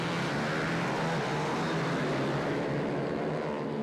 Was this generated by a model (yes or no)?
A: no